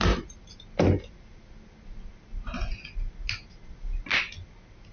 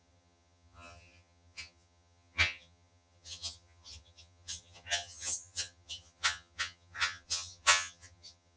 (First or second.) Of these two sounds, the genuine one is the first